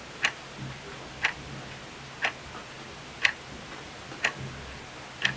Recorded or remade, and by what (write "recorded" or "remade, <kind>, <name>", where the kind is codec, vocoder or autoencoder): recorded